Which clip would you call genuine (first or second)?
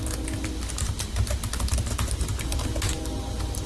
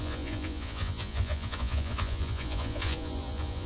first